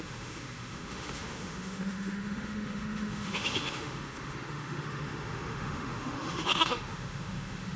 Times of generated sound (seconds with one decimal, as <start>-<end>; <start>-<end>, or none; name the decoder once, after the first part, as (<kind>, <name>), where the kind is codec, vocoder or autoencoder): 0.0-7.8 (autoencoder, DAC-VAE)